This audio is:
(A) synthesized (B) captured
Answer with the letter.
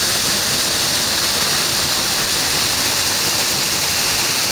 B